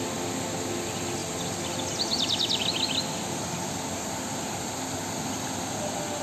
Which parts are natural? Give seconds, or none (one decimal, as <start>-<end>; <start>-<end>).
0.0-6.2